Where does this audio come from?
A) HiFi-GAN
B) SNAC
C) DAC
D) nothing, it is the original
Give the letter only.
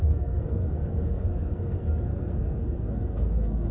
B